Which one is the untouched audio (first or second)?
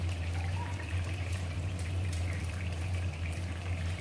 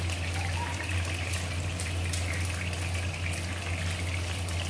second